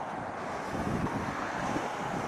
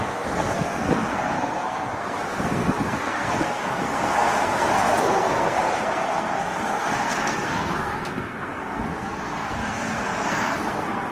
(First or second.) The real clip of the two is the first